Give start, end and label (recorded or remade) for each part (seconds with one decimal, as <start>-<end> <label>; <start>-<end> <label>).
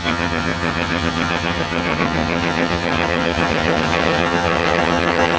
0.0-5.4 remade